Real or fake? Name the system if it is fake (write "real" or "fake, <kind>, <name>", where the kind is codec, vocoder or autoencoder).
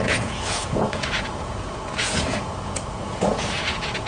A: fake, vocoder, Vocos